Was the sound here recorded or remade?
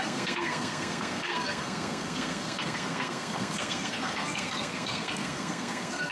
remade